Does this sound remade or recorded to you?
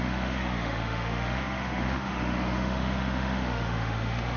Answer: remade